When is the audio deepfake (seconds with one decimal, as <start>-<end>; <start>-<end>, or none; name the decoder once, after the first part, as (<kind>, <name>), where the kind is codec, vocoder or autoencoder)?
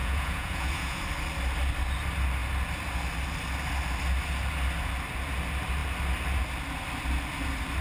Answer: 0.0-1.0 (vocoder, Vocos)